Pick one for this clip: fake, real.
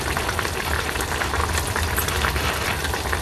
real